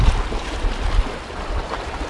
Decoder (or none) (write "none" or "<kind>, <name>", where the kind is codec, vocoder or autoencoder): none